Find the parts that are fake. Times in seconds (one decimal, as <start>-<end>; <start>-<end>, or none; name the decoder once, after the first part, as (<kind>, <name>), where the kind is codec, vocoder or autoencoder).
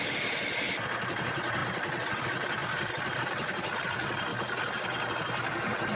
0.0-1.6 (vocoder, BigVGAN v2); 2.2-4.3